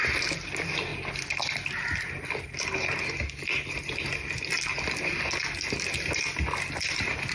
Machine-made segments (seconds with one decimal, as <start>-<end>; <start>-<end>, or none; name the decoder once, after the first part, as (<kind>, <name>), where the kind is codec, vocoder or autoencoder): none